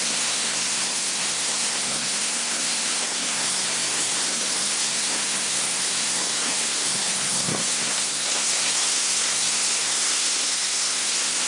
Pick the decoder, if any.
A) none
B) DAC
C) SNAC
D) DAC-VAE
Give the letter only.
C